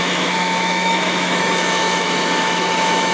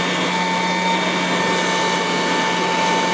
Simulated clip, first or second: first